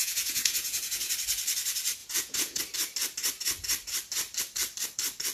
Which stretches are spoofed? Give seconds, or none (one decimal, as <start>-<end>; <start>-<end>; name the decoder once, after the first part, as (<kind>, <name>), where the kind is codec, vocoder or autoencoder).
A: 0.0-1.1 (vocoder, Vocos); 2.0-2.6